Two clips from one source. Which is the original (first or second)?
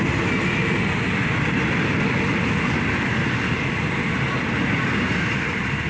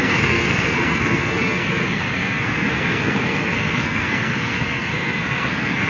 first